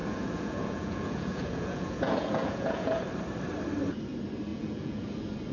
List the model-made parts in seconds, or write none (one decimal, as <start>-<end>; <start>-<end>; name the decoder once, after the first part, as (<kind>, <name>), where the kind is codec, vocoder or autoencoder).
0.0-3.0 (vocoder, Vocos); 4.5-5.1